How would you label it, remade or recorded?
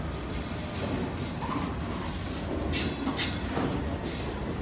recorded